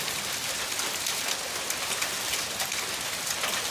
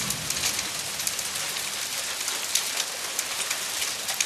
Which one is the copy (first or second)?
first